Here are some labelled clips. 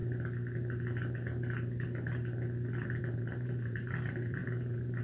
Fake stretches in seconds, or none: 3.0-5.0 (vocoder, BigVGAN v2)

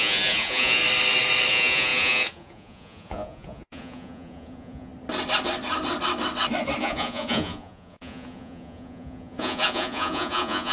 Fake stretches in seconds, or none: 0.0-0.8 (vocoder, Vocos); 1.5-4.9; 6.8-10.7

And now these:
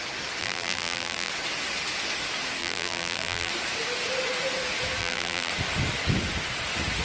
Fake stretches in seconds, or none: 0.4-1.3 (vocoder, BigVGAN v2); 2.6-3.5; 5.0-5.5